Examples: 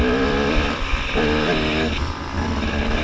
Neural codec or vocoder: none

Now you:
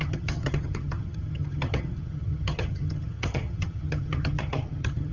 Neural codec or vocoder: vocoder, HiFi-GAN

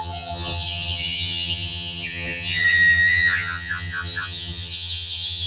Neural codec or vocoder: vocoder, HiFi-GAN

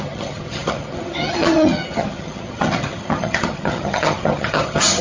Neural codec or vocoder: vocoder, HiFi-GAN